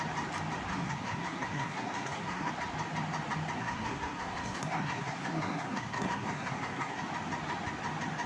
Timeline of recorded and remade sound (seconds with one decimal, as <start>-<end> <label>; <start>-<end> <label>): 0.0-0.7 recorded; 0.7-2.5 remade; 2.5-3.6 recorded; 3.6-7.0 remade; 7.0-8.3 recorded